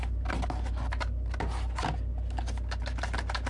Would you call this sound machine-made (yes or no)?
no